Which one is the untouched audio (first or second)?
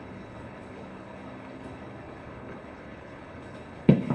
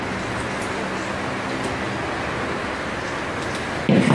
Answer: second